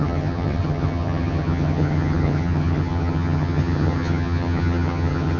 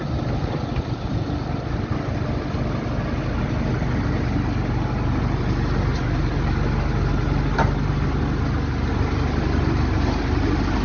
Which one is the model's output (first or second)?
first